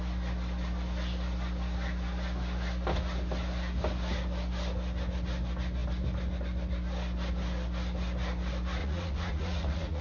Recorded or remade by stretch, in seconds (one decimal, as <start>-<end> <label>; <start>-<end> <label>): 0.0-8.8 recorded; 8.8-10.0 remade